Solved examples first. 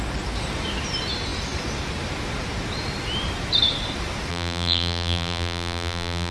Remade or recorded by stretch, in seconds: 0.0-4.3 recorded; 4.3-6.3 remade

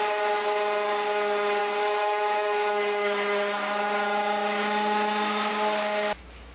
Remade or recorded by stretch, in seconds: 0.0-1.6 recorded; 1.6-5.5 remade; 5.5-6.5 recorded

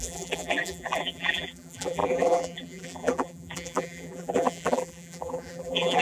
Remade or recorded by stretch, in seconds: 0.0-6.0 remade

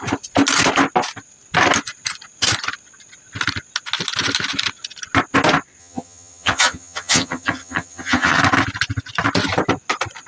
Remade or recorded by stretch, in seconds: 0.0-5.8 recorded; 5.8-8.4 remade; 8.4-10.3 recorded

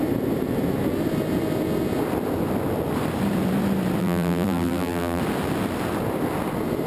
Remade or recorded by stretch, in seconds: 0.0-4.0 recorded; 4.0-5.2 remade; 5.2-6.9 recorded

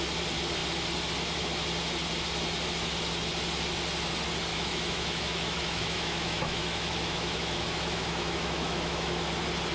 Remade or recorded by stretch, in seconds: 0.0-4.5 recorded; 4.5-9.2 remade; 9.2-9.7 recorded

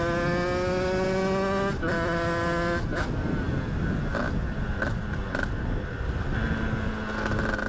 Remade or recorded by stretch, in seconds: 0.0-2.9 recorded; 2.9-3.5 remade; 3.5-4.1 recorded; 4.1-5.9 remade; 5.9-7.7 recorded

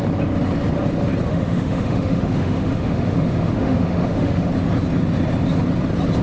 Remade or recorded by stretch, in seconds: 0.0-1.3 recorded; 1.3-4.5 remade; 4.5-6.2 recorded